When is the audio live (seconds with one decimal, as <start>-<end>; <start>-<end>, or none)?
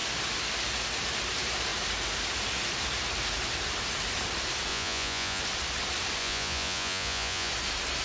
0.0-4.7; 5.4-6.2; 7.5-8.0